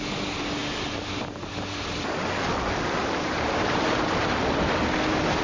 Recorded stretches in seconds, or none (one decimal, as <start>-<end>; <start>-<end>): 0.0-3.0; 4.2-5.4